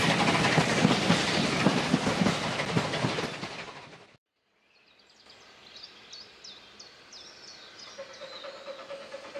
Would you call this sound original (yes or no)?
yes